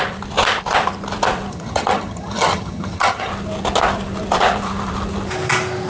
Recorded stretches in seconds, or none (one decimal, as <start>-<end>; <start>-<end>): 0.0-1.5; 3.3-5.9